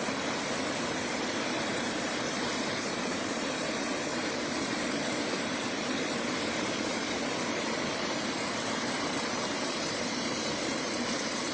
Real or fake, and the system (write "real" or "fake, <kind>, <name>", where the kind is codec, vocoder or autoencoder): fake, vocoder, BigVGAN v2